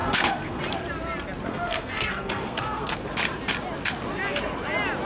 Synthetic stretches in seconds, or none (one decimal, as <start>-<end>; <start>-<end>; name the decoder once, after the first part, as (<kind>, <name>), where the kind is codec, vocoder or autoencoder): 0.0-0.6 (codec, SNAC); 1.5-3.0